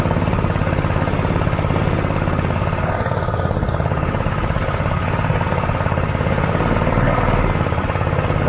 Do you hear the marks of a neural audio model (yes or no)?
no